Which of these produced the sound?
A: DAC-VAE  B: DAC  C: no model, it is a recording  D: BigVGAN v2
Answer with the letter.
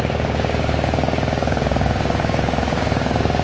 B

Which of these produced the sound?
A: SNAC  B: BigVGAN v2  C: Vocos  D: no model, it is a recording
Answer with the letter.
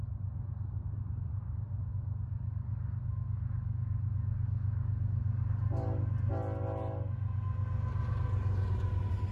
D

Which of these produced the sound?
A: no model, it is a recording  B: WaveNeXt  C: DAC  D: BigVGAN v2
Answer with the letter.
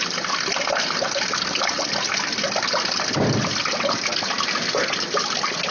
A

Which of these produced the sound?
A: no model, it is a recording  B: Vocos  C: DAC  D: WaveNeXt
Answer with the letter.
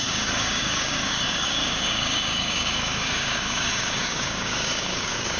C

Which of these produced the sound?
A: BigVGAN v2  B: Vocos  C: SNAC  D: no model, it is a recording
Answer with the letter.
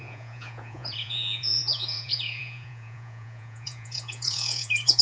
B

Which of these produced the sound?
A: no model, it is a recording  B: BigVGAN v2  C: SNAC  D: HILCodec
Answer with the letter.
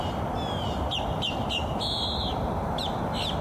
A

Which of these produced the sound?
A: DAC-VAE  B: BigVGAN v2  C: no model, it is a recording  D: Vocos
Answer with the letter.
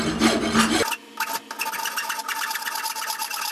C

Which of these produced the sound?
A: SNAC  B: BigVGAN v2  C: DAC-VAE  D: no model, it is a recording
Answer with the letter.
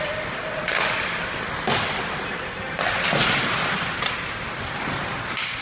D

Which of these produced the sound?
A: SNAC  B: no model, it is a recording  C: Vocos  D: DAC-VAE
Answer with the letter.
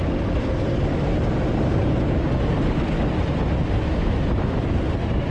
B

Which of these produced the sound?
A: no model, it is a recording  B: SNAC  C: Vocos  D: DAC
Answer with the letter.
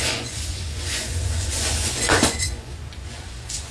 C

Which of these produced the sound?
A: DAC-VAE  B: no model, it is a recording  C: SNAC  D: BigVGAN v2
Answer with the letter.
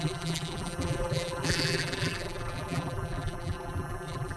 D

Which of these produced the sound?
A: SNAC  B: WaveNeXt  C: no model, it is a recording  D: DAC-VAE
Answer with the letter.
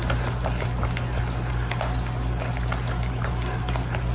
C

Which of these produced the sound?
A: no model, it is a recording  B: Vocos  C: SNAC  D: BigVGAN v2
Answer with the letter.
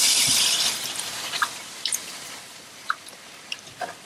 D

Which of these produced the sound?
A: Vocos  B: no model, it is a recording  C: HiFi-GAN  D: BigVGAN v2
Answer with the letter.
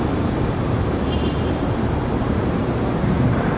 D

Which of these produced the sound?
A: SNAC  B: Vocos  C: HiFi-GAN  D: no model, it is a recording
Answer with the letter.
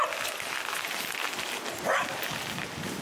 D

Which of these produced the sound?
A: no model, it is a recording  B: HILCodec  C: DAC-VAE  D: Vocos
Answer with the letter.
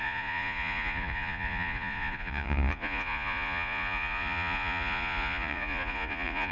D